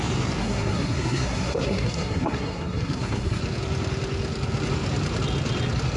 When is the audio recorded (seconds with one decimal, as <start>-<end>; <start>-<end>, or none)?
0.0-0.4; 3.4-6.0